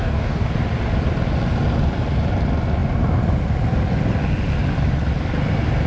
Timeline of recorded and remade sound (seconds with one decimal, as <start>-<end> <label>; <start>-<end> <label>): 0.0-0.5 remade; 0.5-5.9 recorded